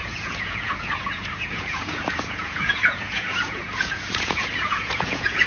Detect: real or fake fake